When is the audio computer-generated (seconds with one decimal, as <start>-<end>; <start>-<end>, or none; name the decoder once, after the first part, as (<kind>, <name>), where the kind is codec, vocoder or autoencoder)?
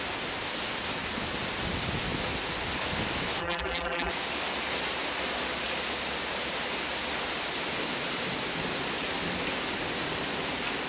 3.4-4.1 (vocoder, BigVGAN v2)